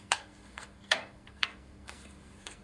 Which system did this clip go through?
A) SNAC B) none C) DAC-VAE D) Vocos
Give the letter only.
A